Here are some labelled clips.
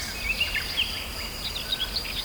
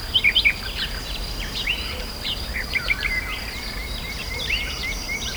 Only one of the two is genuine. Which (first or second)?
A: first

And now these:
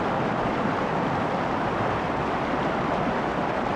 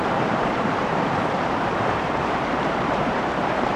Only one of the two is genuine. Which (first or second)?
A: first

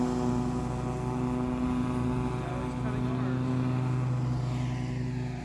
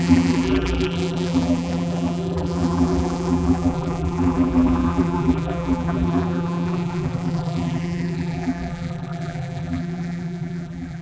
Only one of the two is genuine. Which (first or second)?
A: first